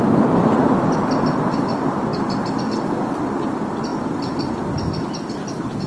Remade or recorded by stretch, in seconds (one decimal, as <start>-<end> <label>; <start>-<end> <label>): 0.0-5.9 recorded